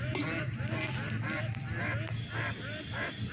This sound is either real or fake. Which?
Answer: real